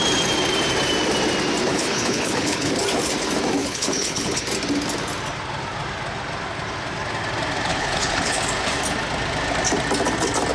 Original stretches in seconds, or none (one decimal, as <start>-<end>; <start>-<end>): 0.0-1.7; 2.7-3.6; 4.4-7.7; 8.4-10.5